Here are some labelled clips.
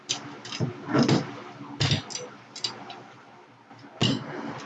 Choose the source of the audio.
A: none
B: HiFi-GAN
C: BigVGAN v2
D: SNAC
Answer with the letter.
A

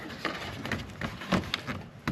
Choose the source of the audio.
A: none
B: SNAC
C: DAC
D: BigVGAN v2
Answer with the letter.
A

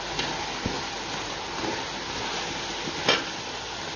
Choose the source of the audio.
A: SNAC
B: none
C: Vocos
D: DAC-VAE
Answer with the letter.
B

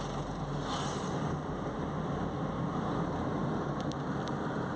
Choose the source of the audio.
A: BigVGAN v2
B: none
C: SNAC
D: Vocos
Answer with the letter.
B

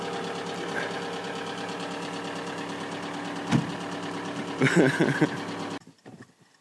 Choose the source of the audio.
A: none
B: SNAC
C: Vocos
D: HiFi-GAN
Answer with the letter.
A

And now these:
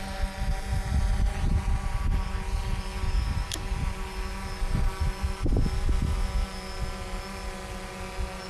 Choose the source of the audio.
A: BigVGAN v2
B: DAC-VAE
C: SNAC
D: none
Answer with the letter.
D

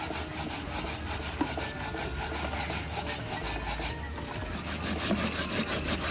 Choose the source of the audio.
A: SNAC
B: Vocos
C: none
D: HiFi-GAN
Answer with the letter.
C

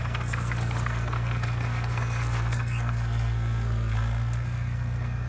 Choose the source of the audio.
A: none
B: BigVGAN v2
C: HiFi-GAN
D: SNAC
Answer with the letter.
D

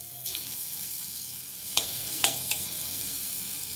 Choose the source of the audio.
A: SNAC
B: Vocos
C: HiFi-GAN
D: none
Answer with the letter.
A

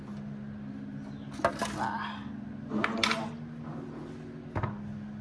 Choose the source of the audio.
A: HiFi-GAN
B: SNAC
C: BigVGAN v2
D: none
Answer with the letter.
D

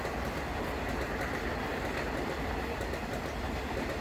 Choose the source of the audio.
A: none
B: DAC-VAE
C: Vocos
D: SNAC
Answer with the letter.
A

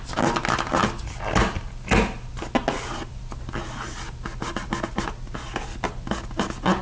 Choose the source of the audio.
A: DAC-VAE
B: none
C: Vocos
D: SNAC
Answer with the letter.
B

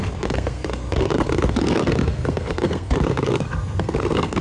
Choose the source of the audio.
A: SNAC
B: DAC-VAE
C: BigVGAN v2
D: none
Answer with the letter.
A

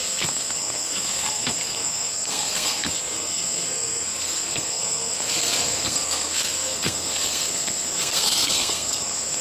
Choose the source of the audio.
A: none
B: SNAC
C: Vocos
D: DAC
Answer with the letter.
B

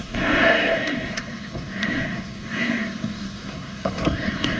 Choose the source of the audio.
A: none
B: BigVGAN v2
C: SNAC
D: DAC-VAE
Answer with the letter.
C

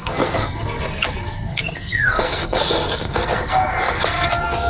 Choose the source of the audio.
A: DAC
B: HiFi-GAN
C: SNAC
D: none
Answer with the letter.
C